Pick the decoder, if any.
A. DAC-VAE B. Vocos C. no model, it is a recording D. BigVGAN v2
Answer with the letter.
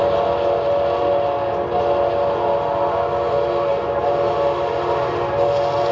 C